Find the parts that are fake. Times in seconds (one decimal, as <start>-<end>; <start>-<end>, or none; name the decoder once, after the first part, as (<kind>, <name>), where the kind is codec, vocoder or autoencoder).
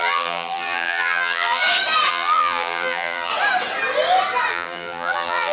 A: 0.0-1.6 (vocoder, BigVGAN v2); 2.1-3.3; 4.5-5.5